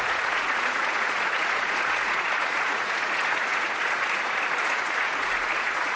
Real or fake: fake